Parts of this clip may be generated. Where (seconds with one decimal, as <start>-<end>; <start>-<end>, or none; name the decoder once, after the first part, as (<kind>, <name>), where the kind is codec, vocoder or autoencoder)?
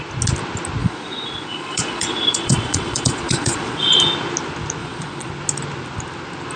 0.8-4.0 (vocoder, Vocos); 4.8-5.3